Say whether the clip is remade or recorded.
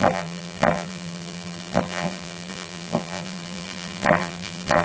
remade